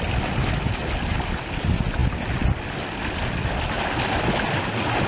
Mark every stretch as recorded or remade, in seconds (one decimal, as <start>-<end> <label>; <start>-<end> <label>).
0.0-5.1 recorded